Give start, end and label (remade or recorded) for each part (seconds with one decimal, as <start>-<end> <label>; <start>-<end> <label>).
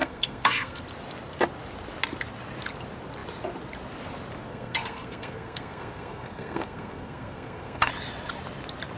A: 0.0-0.8 remade; 0.8-4.5 recorded; 4.5-7.9 remade; 7.9-9.0 recorded